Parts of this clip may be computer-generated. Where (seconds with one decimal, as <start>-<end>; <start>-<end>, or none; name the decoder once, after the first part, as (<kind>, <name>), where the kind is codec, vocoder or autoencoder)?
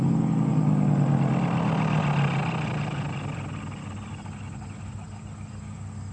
none